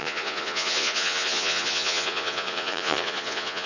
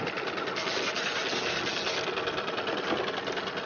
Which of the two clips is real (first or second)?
second